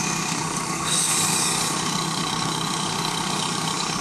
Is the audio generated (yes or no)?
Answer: yes